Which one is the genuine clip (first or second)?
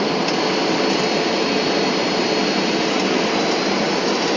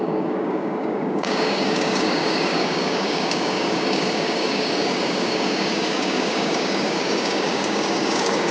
first